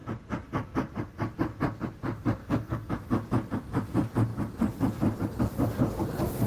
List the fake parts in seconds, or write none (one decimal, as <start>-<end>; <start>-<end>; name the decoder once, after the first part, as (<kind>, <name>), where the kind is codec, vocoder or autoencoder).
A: 2.4-2.9 (codec, SNAC)